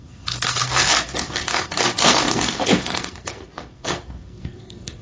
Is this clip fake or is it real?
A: fake